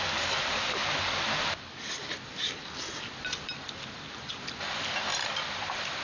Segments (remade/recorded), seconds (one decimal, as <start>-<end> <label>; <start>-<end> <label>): 0.0-6.0 recorded